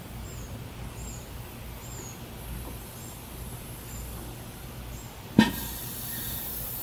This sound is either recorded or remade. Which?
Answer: recorded